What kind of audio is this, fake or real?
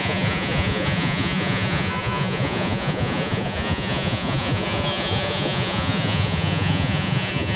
fake